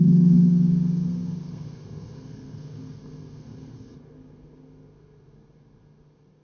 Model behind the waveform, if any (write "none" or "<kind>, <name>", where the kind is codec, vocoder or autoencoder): codec, SNAC